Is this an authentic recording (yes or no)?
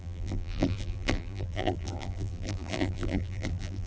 no